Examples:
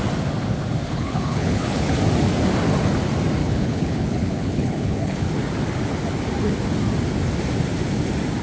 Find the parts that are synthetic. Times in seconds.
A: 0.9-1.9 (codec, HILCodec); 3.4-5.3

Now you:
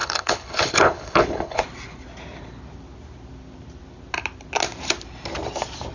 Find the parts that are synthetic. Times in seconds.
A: 0.0-1.6 (codec, HILCodec)

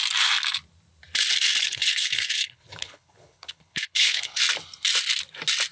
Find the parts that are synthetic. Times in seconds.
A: 1.6-4.4 (codec, HILCodec)

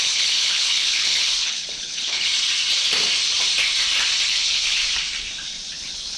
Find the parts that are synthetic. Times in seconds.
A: 0.0-2.3 (codec, HILCodec); 4.3-4.8; 5.7-6.2

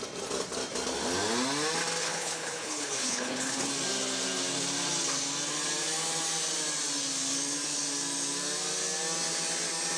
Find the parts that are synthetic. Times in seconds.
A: 2.0-3.7 (codec, HILCodec)

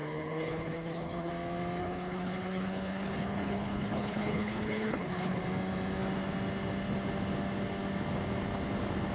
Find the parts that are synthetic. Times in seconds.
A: 0.0-1.3 (codec, HILCodec); 1.8-5.4

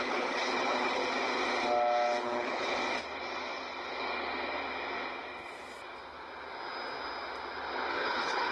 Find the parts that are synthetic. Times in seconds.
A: 0.0-1.0 (codec, HILCodec); 2.2-2.8; 7.9-8.5

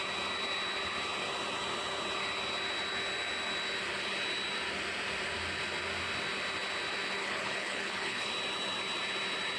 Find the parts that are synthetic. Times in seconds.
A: 7.2-8.3 (codec, HILCodec)